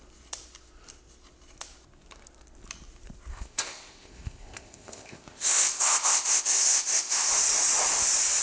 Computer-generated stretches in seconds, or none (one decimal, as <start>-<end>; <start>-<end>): 3.3-7.3